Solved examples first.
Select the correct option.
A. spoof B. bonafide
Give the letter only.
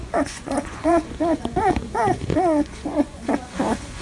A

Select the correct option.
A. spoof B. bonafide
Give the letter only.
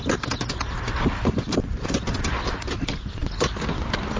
B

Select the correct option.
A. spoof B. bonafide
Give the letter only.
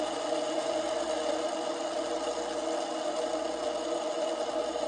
B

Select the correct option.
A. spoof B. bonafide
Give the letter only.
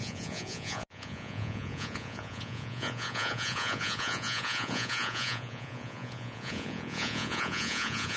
A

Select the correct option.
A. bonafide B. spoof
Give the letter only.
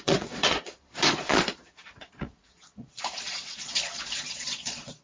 B